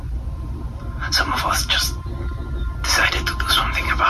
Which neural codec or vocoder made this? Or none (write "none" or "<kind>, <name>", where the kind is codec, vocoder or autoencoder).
none